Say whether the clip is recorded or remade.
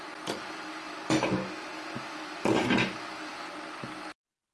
recorded